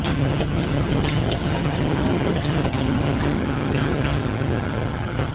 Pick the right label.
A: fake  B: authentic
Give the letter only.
A